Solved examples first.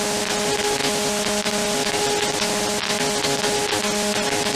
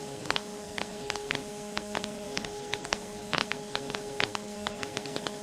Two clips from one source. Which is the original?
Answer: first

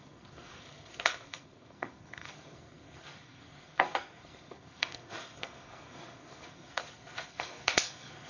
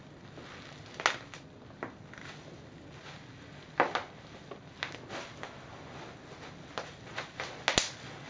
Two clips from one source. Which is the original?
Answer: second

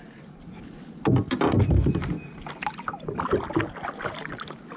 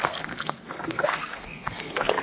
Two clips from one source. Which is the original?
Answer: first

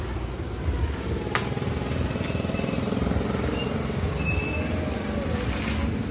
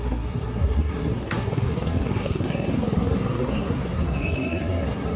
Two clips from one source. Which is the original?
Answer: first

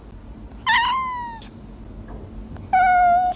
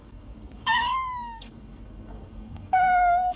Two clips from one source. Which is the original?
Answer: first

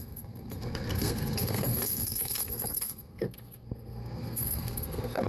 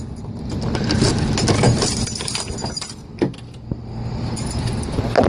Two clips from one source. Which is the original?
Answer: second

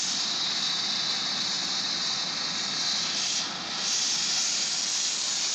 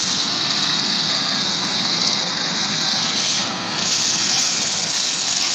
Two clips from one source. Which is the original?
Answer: first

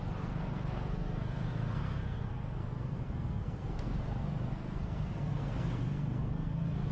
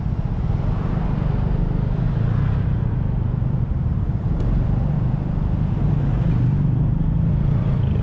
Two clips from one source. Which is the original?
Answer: second